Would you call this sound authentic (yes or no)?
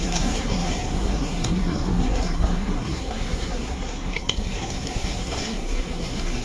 no